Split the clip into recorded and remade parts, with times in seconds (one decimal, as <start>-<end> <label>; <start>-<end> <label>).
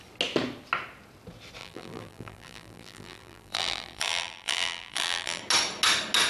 0.0-1.6 recorded; 1.6-5.4 remade; 5.4-6.3 recorded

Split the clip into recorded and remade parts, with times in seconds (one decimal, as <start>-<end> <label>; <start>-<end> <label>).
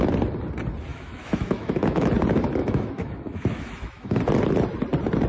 0.0-0.9 recorded; 0.9-2.1 remade; 2.1-2.6 recorded; 2.6-4.2 remade; 4.2-5.3 recorded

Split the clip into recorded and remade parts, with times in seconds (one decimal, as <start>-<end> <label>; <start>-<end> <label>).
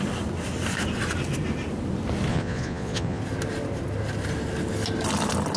0.0-2.3 recorded; 2.3-3.2 remade; 3.2-5.6 recorded